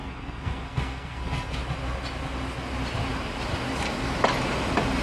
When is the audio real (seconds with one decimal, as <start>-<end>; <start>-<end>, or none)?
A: 1.6-5.0

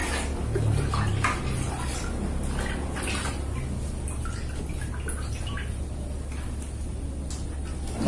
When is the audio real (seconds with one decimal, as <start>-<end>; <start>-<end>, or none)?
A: 0.0-8.1

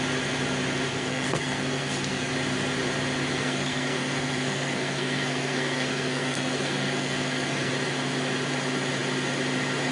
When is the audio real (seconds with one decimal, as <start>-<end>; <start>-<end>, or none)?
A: 0.0-0.9; 2.3-3.3; 7.7-9.9

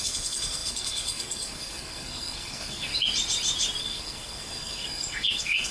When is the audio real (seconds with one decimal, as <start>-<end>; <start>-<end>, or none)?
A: 2.9-3.8